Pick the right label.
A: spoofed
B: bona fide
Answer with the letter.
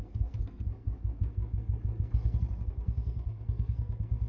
A